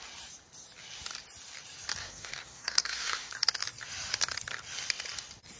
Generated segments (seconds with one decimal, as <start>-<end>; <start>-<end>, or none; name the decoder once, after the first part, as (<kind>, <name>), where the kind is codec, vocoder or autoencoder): 2.0-3.3 (codec, SNAC)